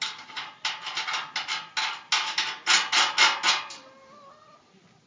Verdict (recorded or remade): recorded